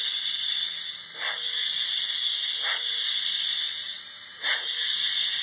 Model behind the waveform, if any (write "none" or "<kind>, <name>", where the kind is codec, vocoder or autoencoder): none